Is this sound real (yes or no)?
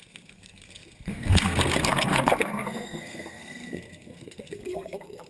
no